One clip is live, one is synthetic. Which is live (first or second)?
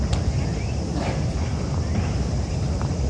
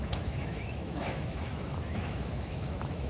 first